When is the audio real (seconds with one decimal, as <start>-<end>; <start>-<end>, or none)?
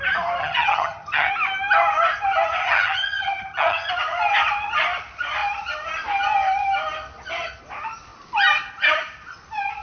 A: 0.0-0.4; 1.3-2.6; 3.9-9.8